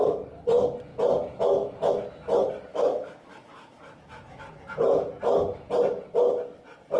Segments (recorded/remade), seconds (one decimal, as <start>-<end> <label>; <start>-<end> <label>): 0.0-2.7 recorded; 2.7-4.4 remade; 4.4-7.0 recorded